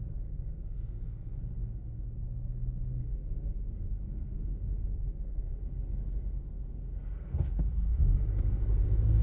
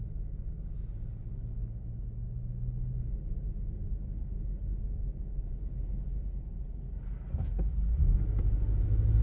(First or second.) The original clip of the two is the second